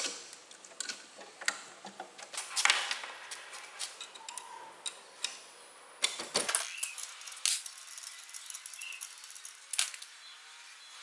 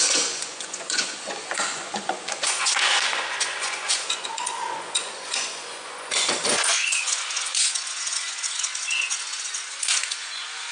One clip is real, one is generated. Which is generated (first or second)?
second